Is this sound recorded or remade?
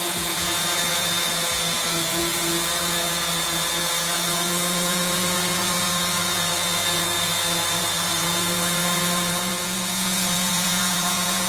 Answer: remade